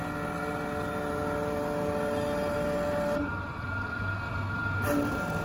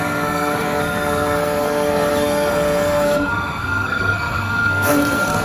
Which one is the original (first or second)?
first